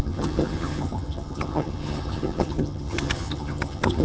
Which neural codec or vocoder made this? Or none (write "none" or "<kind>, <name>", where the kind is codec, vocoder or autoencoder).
vocoder, HiFi-GAN